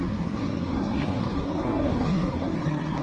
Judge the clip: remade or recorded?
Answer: remade